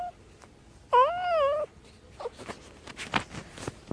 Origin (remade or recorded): recorded